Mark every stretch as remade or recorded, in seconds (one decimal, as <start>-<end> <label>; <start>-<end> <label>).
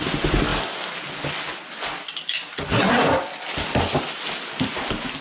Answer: 0.0-5.2 recorded